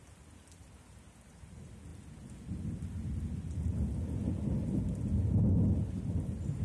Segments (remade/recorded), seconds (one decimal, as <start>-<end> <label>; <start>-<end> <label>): 0.0-6.6 recorded